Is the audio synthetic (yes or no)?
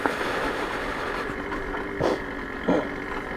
no